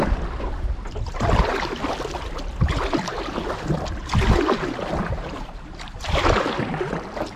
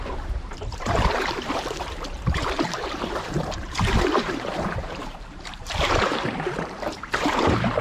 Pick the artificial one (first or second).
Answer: second